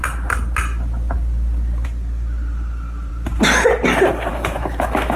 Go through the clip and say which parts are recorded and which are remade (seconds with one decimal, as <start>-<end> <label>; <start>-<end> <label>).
0.0-4.3 recorded; 4.3-5.2 remade